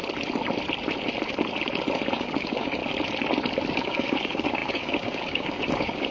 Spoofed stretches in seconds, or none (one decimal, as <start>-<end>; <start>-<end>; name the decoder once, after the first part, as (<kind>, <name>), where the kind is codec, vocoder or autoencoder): 2.1-2.8 (codec, DAC); 3.7-6.1